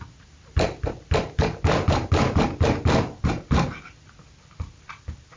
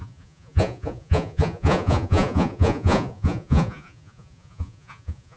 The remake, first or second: second